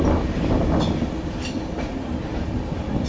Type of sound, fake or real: real